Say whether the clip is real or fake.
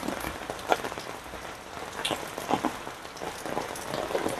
real